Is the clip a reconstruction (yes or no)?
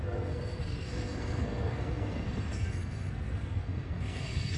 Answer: yes